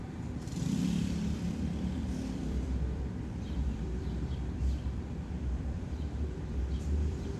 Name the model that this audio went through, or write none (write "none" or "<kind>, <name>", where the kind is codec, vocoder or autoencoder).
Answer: vocoder, BigVGAN v2